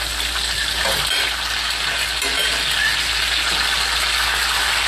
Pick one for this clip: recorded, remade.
recorded